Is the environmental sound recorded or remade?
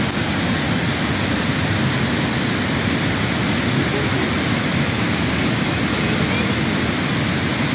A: recorded